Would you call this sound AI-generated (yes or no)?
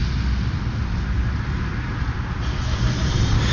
no